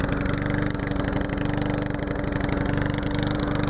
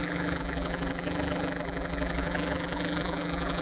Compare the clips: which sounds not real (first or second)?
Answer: second